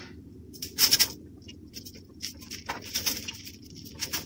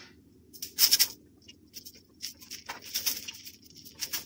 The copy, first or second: first